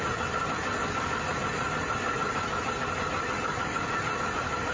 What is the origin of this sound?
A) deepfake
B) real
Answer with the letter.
B